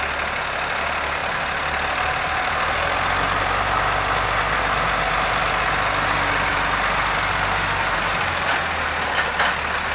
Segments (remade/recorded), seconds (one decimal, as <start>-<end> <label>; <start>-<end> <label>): 0.0-1.2 recorded; 1.2-3.4 remade; 3.4-6.5 recorded; 6.5-8.1 remade; 8.1-9.9 recorded